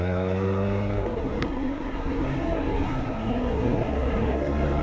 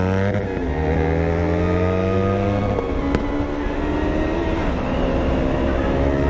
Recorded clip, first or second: second